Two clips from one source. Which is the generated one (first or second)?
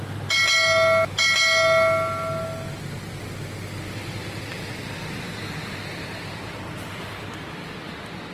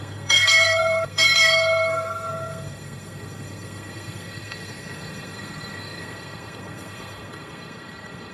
second